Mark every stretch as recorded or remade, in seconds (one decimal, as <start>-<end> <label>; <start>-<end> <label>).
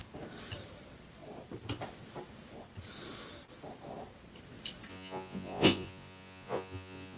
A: 0.0-4.9 recorded; 4.9-7.2 remade